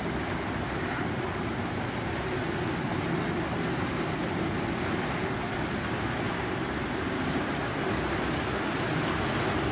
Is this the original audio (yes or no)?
yes